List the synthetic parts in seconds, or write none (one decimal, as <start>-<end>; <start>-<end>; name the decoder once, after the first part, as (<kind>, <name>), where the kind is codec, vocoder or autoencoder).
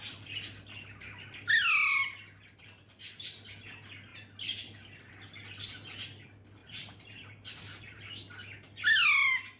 6.6-8.0 (vocoder, BigVGAN v2)